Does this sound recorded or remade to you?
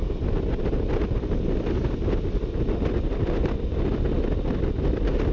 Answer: recorded